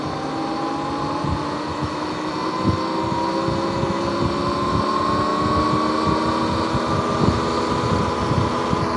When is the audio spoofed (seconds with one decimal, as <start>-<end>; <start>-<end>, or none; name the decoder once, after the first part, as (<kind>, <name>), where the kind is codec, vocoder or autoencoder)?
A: 1.7-2.3 (autoencoder, DAC-VAE)